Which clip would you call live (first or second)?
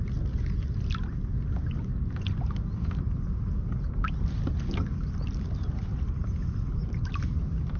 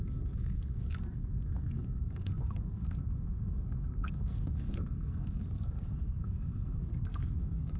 first